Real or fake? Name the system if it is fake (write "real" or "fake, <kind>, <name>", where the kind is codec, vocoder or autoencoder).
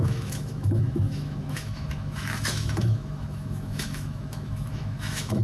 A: fake, autoencoder, DAC-VAE